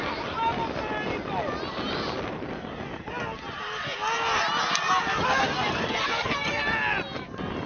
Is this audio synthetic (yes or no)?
no